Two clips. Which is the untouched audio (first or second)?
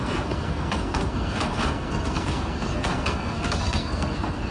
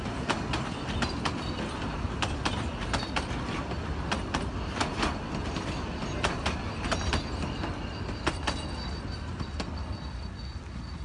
second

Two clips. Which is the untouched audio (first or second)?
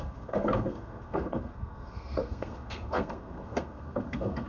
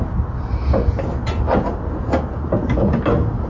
second